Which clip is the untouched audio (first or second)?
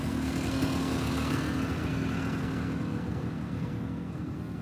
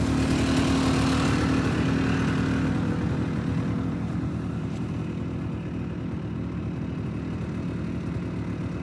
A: second